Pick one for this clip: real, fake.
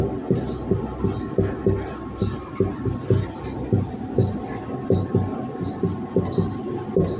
real